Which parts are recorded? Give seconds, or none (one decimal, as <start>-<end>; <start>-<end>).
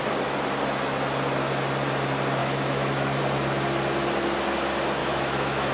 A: 0.0-2.4; 3.2-5.0